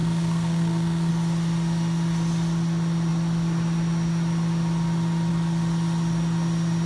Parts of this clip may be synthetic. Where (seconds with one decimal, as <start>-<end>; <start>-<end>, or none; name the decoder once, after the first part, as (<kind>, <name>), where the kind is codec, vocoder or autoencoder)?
0.0-1.1 (codec, SNAC)